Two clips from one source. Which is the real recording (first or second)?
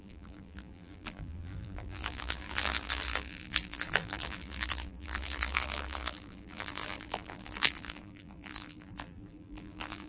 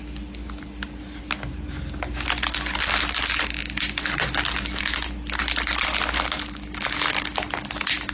second